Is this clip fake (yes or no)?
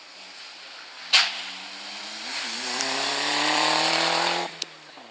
yes